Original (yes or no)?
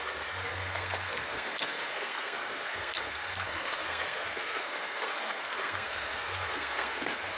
no